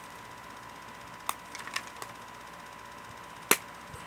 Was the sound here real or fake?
real